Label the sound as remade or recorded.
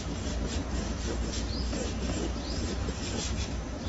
recorded